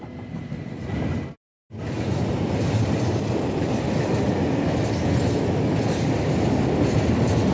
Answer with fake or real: real